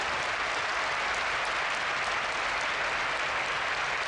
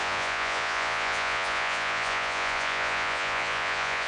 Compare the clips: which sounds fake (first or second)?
second